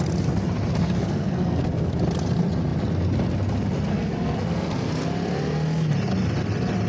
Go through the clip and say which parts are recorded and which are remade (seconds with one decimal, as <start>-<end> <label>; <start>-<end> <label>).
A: 0.0-0.8 recorded; 0.8-1.9 remade; 1.9-3.9 recorded; 3.9-4.9 remade; 4.9-6.9 recorded